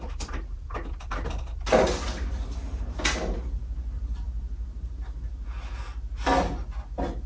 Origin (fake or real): real